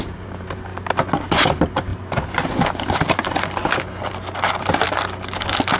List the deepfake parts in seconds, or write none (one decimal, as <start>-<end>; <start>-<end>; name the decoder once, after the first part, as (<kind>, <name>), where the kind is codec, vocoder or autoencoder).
0.0-0.7 (vocoder, BigVGAN v2); 1.3-1.9